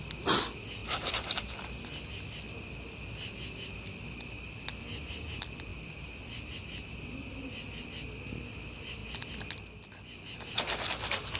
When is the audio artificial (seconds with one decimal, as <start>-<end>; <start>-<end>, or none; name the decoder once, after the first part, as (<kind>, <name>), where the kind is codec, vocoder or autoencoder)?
0.8-1.4 (vocoder, BigVGAN v2)